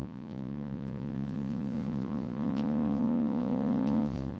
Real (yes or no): no